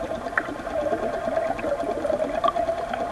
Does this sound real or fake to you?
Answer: real